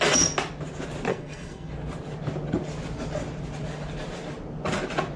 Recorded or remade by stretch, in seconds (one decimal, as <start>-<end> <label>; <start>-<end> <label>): 0.0-1.1 recorded; 1.1-1.7 remade; 1.7-5.2 recorded